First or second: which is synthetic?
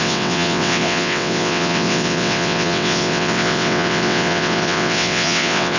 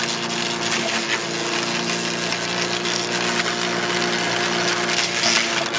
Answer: first